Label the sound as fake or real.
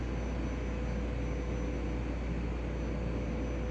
real